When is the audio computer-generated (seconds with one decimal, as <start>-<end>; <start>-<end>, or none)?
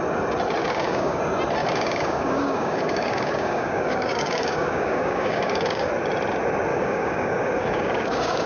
0.6-1.2; 1.6-5.9; 6.7-8.5